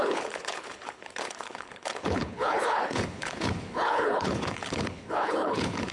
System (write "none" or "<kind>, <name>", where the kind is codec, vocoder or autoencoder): codec, HILCodec